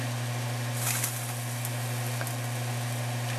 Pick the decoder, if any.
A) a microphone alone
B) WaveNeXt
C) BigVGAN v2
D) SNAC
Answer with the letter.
A